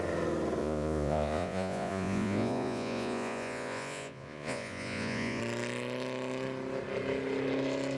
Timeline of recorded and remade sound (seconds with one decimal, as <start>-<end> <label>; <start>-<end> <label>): 0.0-0.6 recorded; 0.6-5.4 remade; 5.4-8.0 recorded